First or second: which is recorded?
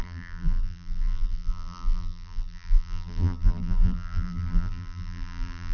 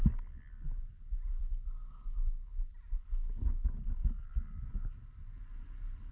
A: second